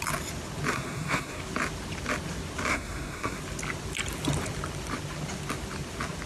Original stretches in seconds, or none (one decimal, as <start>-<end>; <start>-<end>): 0.0-0.7; 1.4-2.7; 3.4-6.3